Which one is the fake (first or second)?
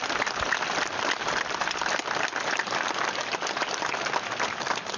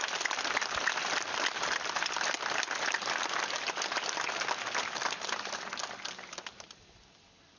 first